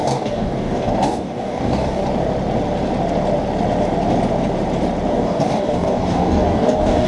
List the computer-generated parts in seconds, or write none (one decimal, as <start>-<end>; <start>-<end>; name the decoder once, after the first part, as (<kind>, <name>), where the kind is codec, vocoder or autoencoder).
0.0-2.0 (codec, DAC); 5.1-7.1